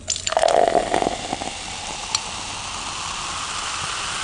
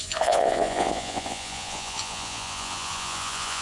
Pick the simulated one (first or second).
second